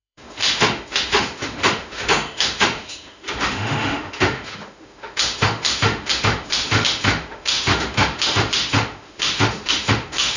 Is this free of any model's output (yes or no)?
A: no